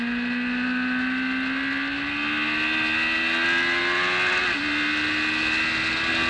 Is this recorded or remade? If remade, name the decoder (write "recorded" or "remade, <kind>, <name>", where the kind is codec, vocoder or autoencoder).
recorded